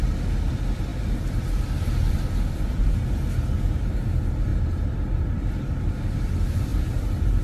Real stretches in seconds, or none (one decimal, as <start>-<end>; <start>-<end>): 0.0-7.4